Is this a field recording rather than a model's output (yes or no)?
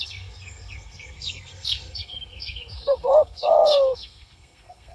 no